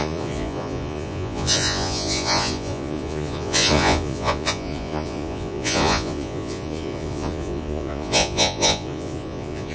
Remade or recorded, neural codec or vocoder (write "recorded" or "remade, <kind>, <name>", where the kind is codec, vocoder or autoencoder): remade, vocoder, Vocos